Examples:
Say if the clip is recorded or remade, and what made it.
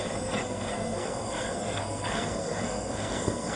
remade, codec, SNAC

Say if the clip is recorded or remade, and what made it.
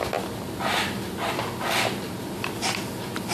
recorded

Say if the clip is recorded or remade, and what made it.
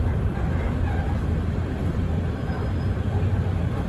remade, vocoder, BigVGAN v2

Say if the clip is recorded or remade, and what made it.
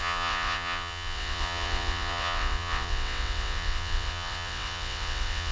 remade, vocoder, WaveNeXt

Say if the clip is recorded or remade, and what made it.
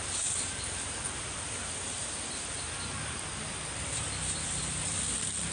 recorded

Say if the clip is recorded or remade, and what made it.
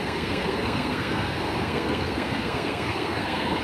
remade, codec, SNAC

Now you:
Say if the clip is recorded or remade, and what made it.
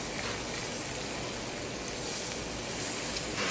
recorded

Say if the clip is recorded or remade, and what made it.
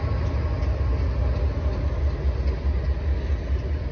recorded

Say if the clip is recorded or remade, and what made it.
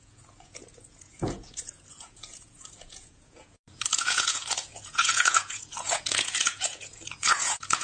remade, vocoder, Vocos